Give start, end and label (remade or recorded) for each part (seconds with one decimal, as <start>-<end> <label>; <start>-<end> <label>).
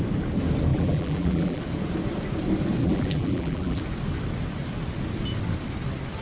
0.0-0.7 recorded; 0.7-1.6 remade; 1.6-2.8 recorded; 2.8-3.8 remade; 3.8-6.2 recorded